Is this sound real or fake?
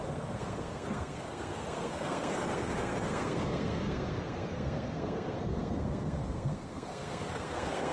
fake